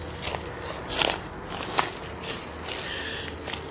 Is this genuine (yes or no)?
yes